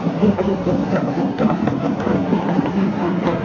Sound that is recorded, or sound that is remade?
remade